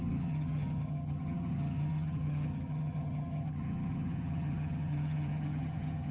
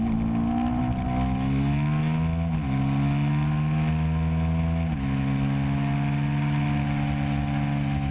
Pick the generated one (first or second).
first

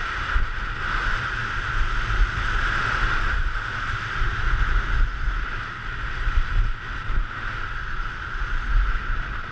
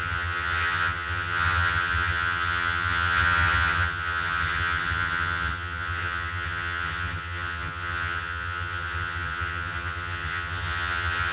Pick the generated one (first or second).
second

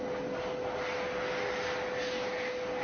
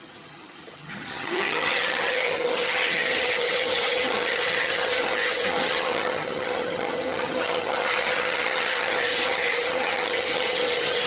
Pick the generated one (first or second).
second